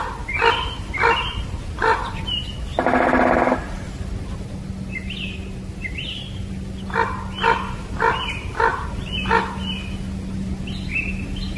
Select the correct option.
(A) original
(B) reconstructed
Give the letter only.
A